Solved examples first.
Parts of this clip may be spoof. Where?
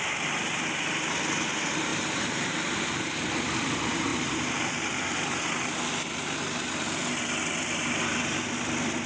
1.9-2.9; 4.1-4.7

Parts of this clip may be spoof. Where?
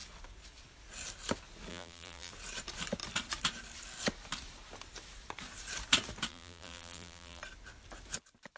1.7-2.3; 6.3-7.4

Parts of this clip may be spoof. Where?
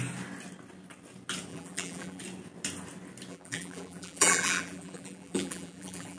1.5-2.2; 3.3-6.2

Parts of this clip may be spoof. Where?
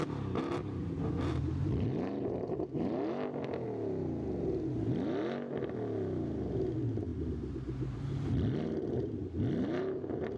0.8-3.1